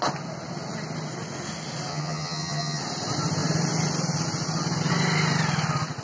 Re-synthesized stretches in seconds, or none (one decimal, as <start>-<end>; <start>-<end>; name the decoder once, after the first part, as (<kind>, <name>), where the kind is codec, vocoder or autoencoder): 1.9-2.8 (vocoder, HiFi-GAN)